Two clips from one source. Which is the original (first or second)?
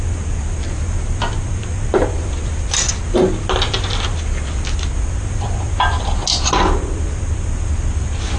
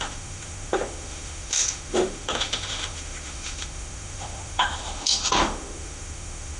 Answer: first